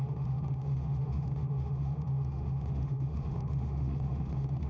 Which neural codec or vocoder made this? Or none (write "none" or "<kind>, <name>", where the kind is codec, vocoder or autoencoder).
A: autoencoder, DAC-VAE